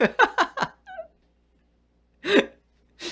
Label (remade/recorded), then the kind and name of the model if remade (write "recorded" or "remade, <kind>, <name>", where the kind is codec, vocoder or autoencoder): recorded